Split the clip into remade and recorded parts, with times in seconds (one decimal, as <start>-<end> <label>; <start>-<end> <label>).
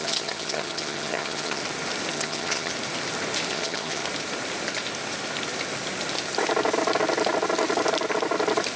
0.0-1.6 remade; 1.6-2.1 recorded; 2.1-2.7 remade; 2.7-3.5 recorded; 3.5-4.0 remade; 4.0-8.8 recorded